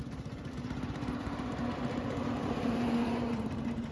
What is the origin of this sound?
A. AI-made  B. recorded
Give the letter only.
A